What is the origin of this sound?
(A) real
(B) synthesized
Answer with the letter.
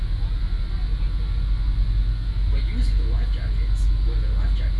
A